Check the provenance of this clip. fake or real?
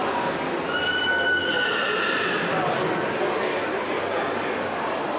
real